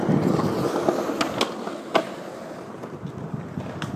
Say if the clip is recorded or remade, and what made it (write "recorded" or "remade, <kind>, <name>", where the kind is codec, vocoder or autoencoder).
recorded